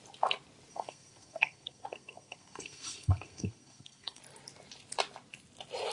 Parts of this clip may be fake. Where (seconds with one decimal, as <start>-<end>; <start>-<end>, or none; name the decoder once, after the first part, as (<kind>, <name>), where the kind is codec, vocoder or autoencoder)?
0.7-4.2 (codec, SNAC)